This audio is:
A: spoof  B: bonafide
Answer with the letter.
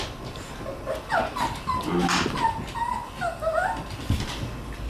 B